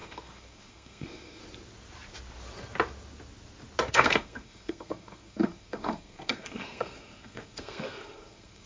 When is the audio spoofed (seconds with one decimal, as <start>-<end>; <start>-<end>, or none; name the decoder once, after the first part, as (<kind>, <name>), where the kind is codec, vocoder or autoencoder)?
0.0-1.4 (codec, SNAC); 3.9-8.7